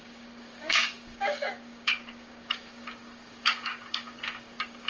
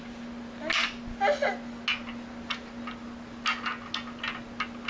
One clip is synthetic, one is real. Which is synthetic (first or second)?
first